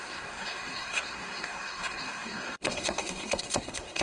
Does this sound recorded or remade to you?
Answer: remade